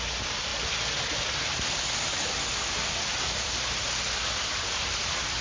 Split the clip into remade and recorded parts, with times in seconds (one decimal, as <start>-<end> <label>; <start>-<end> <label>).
0.0-5.4 recorded